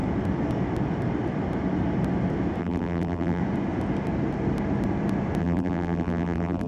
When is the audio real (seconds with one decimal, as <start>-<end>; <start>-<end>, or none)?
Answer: 0.0-2.6; 3.4-5.4